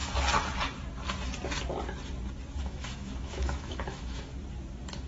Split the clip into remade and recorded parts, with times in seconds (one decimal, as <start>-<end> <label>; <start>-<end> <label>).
0.0-2.6 recorded; 2.6-4.3 remade; 4.3-5.1 recorded